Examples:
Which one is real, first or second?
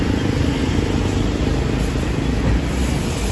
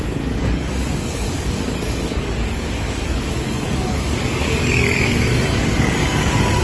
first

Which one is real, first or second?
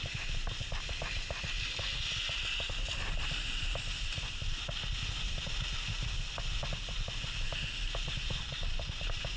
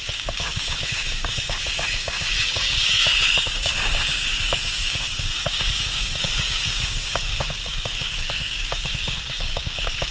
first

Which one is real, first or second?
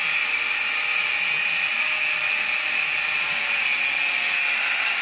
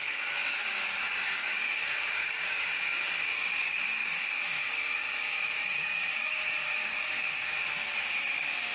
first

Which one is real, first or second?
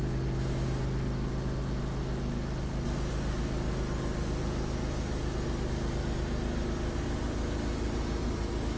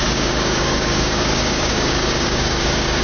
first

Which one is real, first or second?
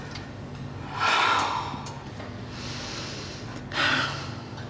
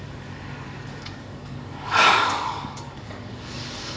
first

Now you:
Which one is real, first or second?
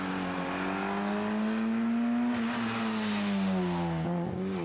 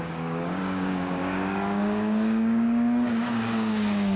first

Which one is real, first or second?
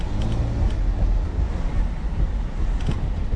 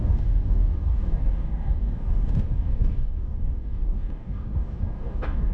first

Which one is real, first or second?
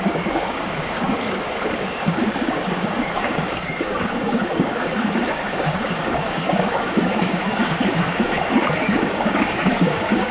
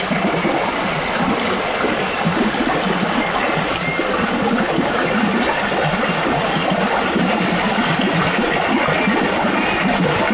second